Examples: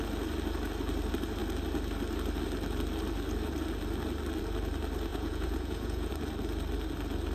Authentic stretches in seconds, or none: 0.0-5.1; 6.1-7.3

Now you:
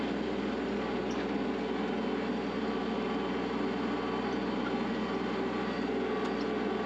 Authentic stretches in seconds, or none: 0.0-6.9